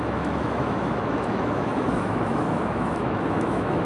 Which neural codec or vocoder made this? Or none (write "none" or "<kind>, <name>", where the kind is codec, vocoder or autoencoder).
autoencoder, DAC-VAE